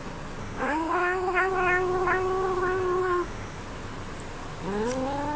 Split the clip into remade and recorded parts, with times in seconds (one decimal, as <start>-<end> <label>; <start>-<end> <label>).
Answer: 0.0-0.4 recorded; 0.4-1.5 remade; 1.5-3.0 recorded; 3.0-3.6 remade; 3.6-5.4 recorded